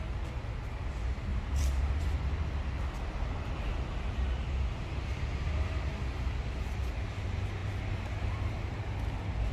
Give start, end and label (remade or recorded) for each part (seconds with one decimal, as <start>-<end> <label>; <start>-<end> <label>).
0.0-1.3 recorded; 1.3-1.9 remade; 1.9-3.7 recorded; 3.7-5.9 remade; 5.9-9.5 recorded

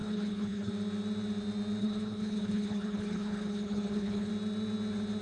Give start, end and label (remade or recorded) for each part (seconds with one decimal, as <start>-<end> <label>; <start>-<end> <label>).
0.0-0.7 remade; 0.7-1.8 recorded; 1.8-4.3 remade; 4.3-5.2 recorded

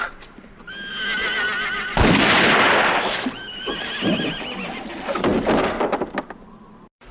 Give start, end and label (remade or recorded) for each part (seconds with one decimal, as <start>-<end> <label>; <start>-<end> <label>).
0.0-7.1 recorded

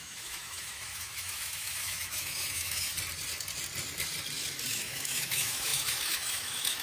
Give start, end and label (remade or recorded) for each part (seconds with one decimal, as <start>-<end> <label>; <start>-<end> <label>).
0.0-2.9 remade; 2.9-4.7 recorded; 4.7-6.8 remade